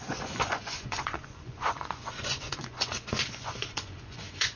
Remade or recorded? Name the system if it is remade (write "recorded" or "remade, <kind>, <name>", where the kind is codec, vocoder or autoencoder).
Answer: remade, vocoder, Vocos